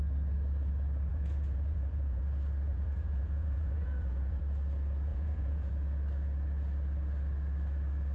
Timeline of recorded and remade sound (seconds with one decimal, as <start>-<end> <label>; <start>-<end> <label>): 0.0-1.1 recorded; 1.1-2.2 remade; 2.2-2.7 recorded; 2.7-4.4 remade; 4.4-5.1 recorded; 5.1-5.7 remade; 5.7-8.1 recorded